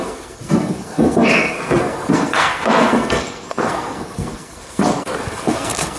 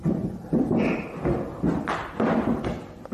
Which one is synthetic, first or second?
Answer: first